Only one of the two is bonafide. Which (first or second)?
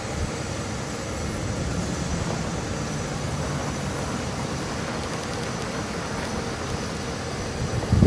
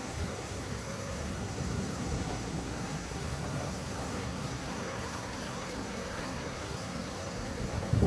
first